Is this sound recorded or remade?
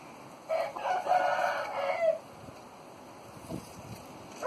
recorded